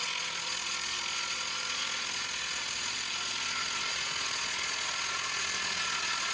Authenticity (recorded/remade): remade